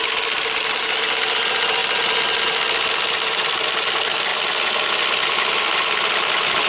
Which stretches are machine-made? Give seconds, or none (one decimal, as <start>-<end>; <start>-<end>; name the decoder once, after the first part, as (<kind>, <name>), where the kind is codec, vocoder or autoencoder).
none